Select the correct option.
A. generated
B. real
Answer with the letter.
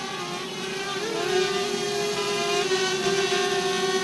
B